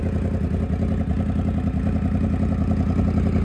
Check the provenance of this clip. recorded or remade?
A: recorded